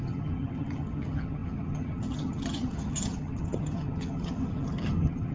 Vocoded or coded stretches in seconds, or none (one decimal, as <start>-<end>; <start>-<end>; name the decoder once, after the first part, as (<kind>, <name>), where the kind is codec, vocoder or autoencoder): 0.0-5.3 (vocoder, HiFi-GAN)